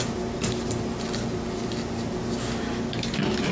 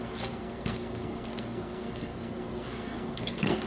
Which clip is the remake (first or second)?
second